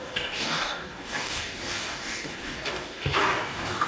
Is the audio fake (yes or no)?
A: yes